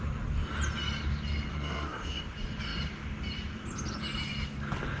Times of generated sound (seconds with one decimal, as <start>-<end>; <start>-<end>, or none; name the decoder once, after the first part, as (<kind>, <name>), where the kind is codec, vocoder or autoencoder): 1.5-2.2 (codec, SNAC)